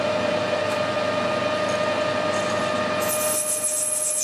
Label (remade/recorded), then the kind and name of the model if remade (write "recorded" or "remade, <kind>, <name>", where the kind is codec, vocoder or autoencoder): recorded